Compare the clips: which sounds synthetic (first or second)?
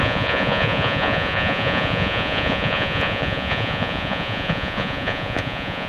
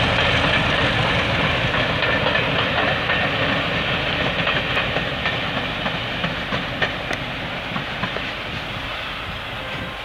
first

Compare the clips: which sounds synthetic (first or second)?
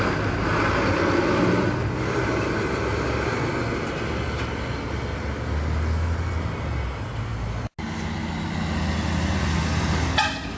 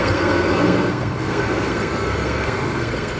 second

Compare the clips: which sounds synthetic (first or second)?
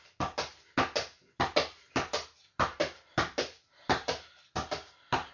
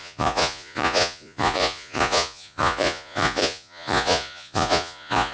second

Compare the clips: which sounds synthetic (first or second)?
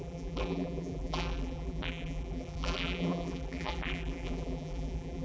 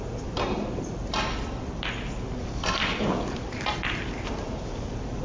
first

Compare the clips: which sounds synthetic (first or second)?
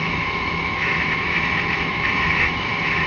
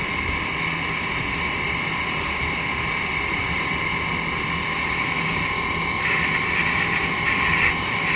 first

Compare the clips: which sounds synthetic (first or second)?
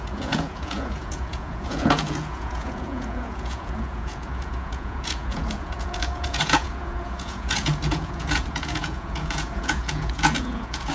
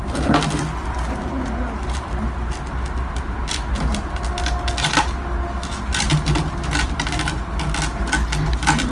first